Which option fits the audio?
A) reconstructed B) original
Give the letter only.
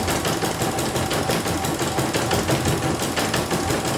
B